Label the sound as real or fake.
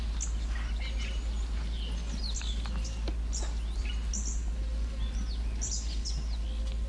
real